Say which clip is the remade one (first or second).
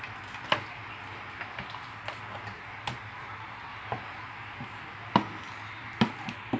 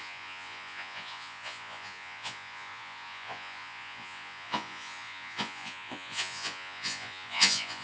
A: second